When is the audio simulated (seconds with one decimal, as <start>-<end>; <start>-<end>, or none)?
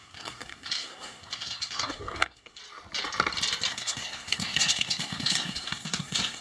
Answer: 0.0-2.6; 3.7-6.4